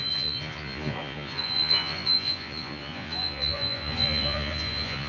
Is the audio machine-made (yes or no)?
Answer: yes